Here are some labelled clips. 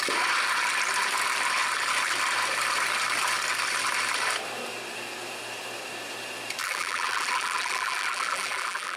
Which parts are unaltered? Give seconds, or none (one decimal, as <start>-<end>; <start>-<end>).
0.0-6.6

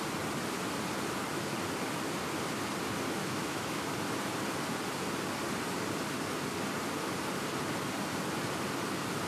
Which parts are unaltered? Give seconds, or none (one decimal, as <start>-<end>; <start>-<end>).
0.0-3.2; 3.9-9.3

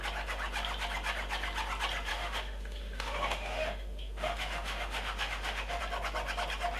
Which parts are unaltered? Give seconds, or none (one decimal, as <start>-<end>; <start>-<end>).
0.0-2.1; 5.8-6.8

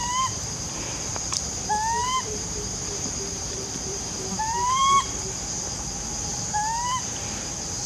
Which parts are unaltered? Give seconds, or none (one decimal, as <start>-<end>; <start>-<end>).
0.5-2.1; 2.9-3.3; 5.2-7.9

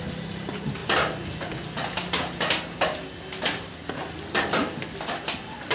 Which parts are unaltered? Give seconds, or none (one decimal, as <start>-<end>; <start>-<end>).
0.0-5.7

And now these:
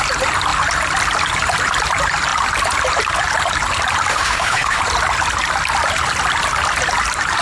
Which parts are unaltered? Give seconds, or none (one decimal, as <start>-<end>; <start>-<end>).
0.0-4.1; 4.8-7.4